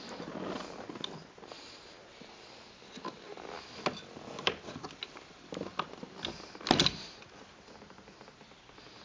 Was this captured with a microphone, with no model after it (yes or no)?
yes